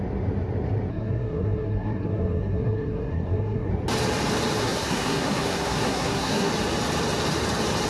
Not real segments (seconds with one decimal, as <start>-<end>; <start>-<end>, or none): 0.9-3.7; 4.6-6.5